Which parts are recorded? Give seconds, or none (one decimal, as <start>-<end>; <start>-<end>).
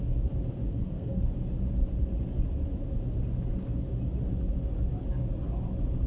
0.0-0.7; 1.2-6.1